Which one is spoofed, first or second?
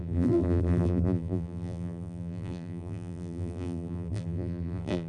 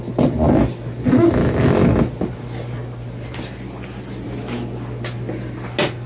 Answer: first